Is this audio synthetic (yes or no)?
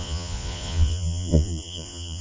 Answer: yes